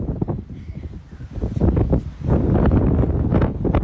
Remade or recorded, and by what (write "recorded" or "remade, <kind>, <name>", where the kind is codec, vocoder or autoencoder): recorded